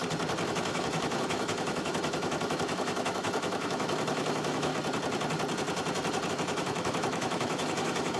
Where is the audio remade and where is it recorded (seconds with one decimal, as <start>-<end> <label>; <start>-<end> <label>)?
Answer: 0.0-0.5 recorded; 0.5-4.7 remade; 4.7-6.3 recorded; 6.3-8.2 remade